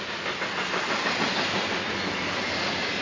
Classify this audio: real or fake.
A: real